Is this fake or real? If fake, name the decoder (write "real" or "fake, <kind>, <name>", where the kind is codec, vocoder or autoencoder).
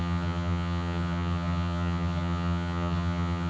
fake, vocoder, HiFi-GAN